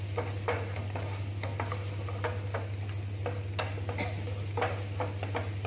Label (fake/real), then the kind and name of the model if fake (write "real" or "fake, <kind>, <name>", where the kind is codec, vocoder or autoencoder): real